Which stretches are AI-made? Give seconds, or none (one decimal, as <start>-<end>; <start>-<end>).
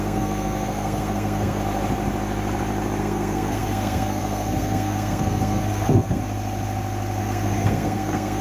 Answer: 0.0-1.6; 3.0-6.2; 7.2-8.4